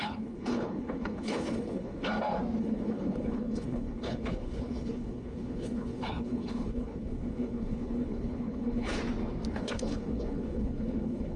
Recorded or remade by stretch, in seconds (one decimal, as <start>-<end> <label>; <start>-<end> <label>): 0.0-2.1 remade; 2.1-2.6 recorded; 2.6-9.0 remade; 9.0-9.5 recorded; 9.5-11.4 remade